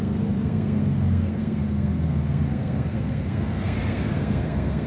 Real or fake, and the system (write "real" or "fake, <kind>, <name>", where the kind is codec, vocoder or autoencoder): fake, codec, SNAC